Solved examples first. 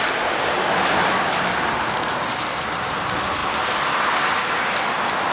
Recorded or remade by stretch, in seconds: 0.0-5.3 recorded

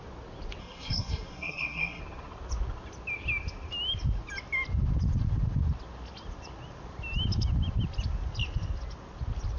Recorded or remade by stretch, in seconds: 0.0-0.6 recorded; 0.6-2.0 remade; 2.0-9.6 recorded

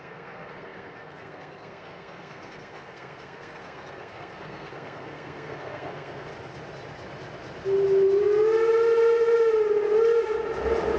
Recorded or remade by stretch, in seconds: 0.0-6.3 remade; 6.3-11.0 recorded

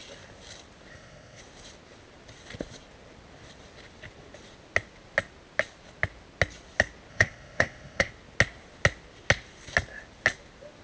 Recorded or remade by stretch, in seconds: 0.0-0.9 recorded; 0.9-1.4 remade; 1.4-7.1 recorded; 7.1-8.1 remade; 8.1-10.8 recorded

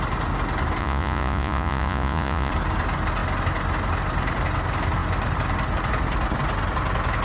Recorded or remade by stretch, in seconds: 0.0-0.8 recorded; 0.8-2.5 remade; 2.5-7.2 recorded

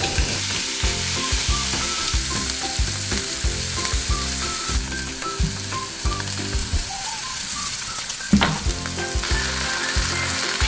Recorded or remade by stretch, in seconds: 0.0-6.6 recorded; 6.6-8.3 remade; 8.3-10.7 recorded

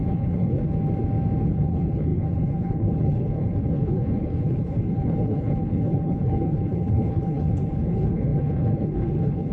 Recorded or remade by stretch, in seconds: 0.0-0.6 remade; 0.6-1.4 recorded; 1.4-9.5 remade

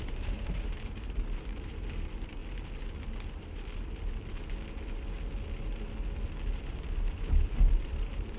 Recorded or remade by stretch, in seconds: 0.0-2.4 remade; 2.4-7.1 recorded; 7.1-8.4 remade